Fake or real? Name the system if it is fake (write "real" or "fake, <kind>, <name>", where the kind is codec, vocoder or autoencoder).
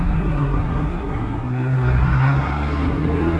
fake, codec, SNAC